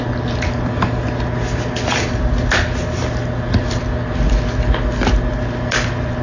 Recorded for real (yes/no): yes